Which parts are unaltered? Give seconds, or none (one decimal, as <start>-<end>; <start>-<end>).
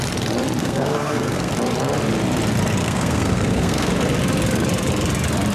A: 0.0-0.6; 1.5-2.8; 3.9-5.5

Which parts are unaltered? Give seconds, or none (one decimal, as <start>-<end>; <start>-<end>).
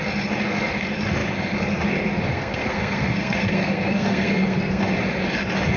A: 0.0-2.3; 4.8-5.8